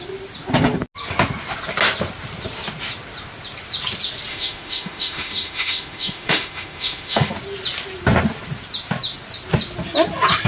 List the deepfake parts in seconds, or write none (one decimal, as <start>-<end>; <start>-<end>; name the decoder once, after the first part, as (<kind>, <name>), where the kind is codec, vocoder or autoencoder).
4.3-7.3 (autoencoder, DAC-VAE)